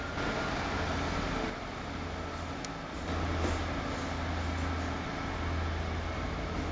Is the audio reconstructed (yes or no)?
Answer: no